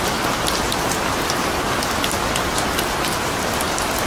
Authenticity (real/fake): real